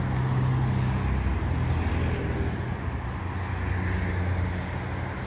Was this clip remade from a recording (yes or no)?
no